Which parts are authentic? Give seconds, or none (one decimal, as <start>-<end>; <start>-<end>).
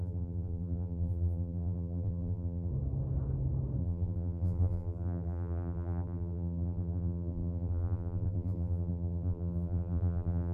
2.7-3.8